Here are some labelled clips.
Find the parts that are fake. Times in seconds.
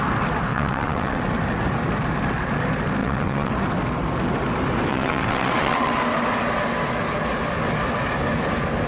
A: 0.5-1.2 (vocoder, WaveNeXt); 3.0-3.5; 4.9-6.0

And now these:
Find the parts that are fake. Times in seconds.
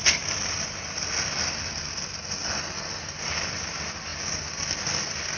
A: none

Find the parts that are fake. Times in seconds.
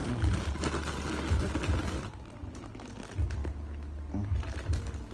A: none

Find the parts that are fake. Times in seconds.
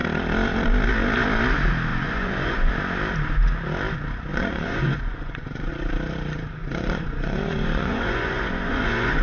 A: 1.9-2.7 (vocoder, Vocos); 4.3-5.7; 6.6-9.2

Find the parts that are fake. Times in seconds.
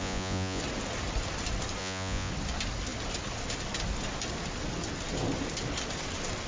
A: 0.0-0.6 (vocoder, Vocos); 1.8-2.3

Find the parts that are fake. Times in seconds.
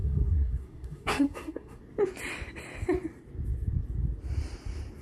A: 0.0-1.8 (codec, SNAC)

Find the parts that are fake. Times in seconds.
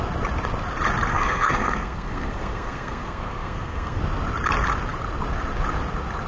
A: 1.1-4.0 (codec, SNAC)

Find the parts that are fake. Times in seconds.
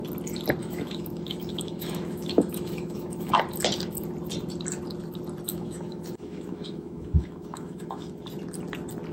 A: 0.6-3.4 (autoencoder, DAC-VAE); 5.5-8.1